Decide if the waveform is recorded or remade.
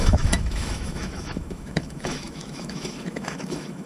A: remade